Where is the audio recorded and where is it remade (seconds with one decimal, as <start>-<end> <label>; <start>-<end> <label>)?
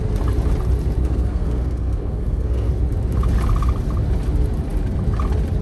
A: 0.0-1.0 recorded; 1.0-2.7 remade; 2.7-5.6 recorded